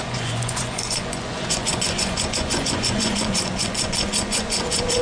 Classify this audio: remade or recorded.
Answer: remade